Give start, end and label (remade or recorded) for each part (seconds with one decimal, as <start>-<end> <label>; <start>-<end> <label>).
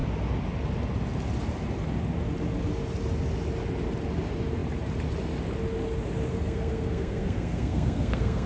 0.0-6.3 recorded; 6.3-8.5 remade